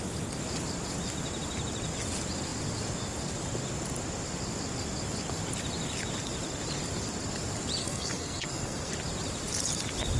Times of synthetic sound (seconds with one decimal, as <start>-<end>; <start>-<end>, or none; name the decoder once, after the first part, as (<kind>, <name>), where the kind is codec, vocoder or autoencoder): 7.8-8.9 (codec, SNAC)